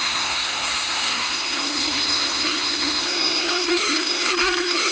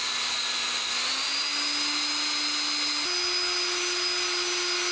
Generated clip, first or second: first